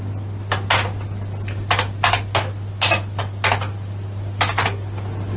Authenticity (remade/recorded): recorded